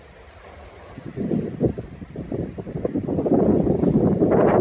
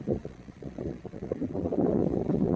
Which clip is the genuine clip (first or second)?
first